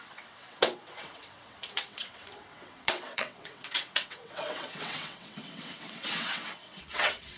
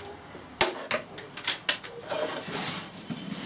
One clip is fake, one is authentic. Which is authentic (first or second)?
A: second